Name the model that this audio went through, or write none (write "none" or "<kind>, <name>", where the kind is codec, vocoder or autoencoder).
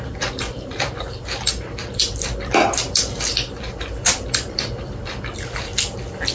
vocoder, BigVGAN v2